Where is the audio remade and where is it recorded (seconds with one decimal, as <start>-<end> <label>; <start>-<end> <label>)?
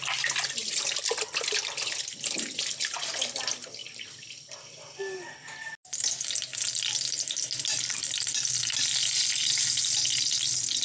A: 0.0-10.8 recorded